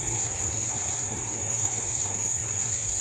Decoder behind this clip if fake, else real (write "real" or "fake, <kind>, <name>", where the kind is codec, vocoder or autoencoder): fake, codec, SNAC